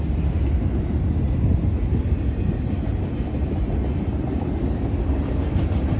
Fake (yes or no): no